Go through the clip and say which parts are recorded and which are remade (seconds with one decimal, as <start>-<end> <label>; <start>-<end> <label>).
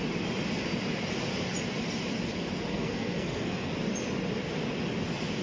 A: 0.0-2.7 recorded; 2.7-3.7 remade; 3.7-5.4 recorded